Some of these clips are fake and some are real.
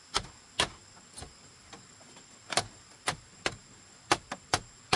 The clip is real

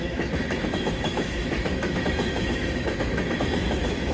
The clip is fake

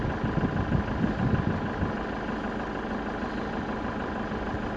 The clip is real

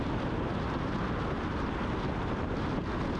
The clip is real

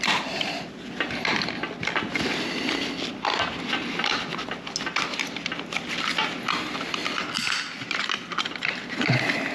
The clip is real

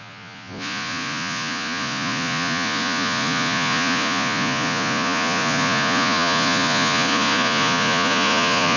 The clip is fake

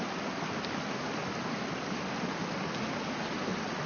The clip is real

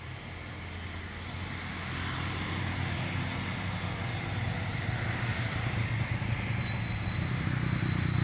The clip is real